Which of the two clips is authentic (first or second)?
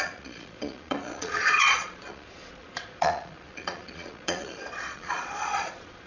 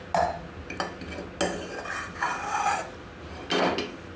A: second